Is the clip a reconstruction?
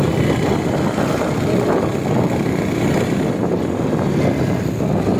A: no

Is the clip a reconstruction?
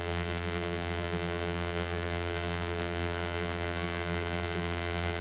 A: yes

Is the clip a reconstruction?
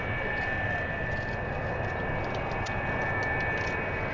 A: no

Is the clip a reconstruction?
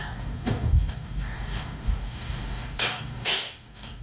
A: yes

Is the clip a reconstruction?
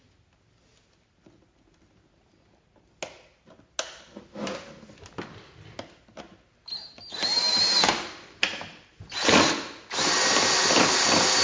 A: no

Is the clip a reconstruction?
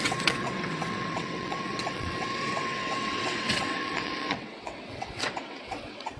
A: yes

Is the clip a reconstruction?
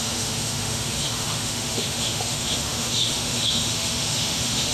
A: yes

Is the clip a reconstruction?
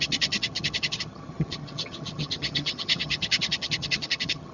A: yes